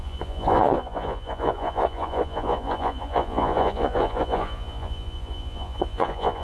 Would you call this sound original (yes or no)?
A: no